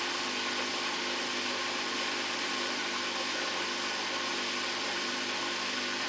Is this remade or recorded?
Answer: recorded